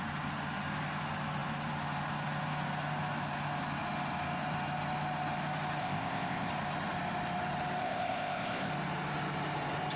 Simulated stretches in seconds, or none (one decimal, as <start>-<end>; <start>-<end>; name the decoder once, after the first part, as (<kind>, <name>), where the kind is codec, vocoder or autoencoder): 5.8-6.5 (codec, ZipCodec); 7.8-8.7